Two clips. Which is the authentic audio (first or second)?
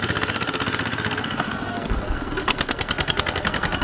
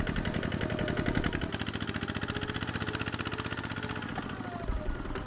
second